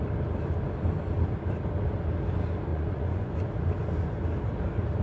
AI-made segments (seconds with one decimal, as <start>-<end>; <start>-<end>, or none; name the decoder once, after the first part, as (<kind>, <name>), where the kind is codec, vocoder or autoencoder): 2.7-3.5 (vocoder, Vocos)